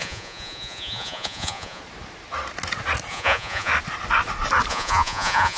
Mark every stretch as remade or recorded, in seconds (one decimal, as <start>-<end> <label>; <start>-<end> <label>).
0.0-1.8 remade; 1.8-3.1 recorded; 3.1-3.7 remade; 3.7-4.7 recorded; 4.7-5.6 remade